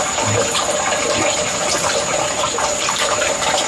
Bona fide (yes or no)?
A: yes